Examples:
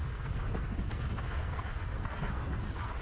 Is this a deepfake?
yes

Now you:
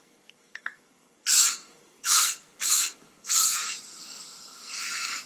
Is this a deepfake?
yes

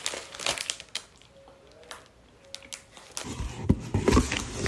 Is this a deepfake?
no